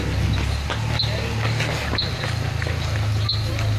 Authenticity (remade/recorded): recorded